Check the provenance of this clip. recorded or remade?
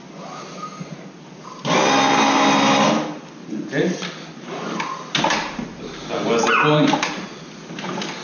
recorded